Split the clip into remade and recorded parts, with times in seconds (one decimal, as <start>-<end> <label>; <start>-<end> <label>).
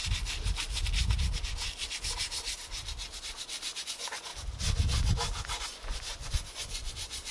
0.0-3.8 recorded; 3.8-4.3 remade; 4.3-5.6 recorded; 5.6-7.3 remade